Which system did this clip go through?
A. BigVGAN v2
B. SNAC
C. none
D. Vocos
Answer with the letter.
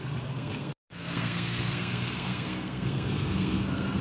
B